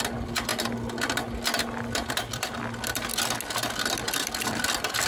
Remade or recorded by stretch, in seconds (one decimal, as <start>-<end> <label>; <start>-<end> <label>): 0.0-5.1 recorded